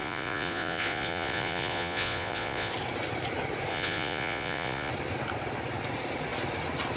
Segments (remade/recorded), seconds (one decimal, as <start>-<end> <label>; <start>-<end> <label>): 0.0-2.7 remade; 2.7-3.7 recorded; 3.7-4.9 remade; 4.9-7.0 recorded